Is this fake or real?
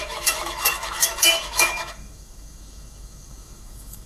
fake